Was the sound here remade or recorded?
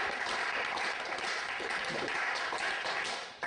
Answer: remade